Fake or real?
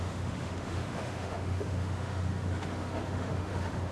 fake